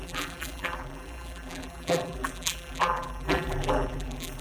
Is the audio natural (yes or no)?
no